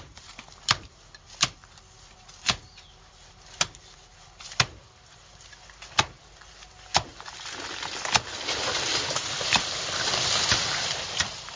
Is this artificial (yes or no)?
no